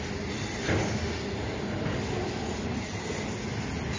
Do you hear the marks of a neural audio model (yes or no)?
no